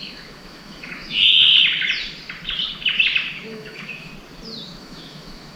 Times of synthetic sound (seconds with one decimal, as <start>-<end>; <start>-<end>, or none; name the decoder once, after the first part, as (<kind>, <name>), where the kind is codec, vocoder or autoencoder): 0.0-1.5 (autoencoder, DAC-VAE); 3.5-4.1; 4.8-5.6

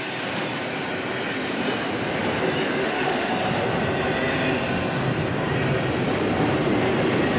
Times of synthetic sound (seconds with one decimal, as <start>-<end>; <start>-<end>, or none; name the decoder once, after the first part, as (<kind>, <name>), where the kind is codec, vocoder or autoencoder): 2.8-3.3 (autoencoder, DAC-VAE)

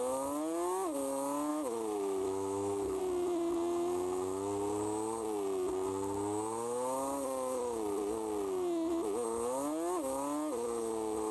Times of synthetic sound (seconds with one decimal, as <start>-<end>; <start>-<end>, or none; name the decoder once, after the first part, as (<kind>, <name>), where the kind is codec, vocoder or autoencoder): 1.5-3.0 (autoencoder, DAC-VAE)

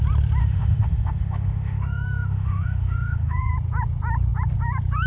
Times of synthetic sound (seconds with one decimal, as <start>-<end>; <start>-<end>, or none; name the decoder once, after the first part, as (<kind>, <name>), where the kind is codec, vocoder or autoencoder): 0.4-3.5 (autoencoder, DAC-VAE)